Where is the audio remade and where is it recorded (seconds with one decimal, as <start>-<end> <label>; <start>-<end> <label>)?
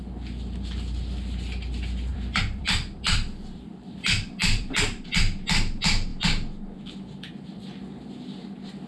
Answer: 0.0-2.1 recorded; 2.1-5.0 remade; 5.0-8.9 recorded